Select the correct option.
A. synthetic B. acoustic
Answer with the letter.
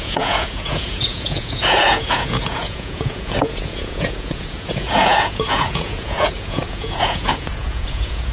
A